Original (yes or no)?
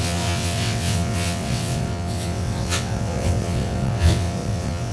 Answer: no